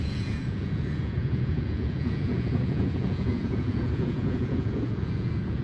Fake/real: fake